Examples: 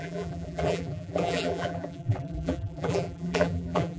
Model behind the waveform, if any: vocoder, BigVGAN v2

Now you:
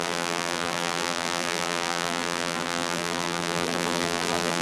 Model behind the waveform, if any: vocoder, BigVGAN v2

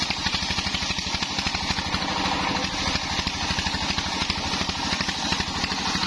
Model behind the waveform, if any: none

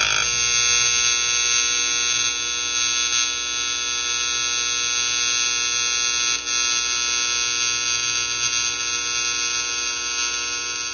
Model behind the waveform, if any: none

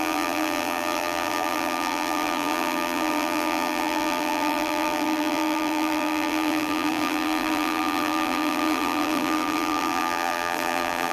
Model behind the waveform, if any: vocoder, BigVGAN v2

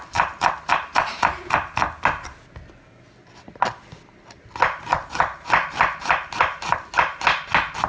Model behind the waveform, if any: none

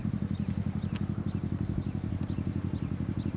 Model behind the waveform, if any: none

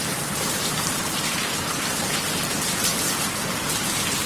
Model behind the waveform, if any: vocoder, BigVGAN v2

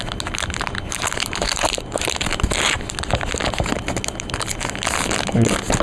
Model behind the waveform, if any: none